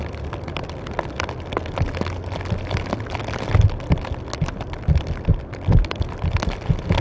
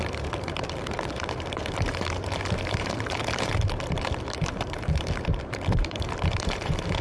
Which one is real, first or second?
first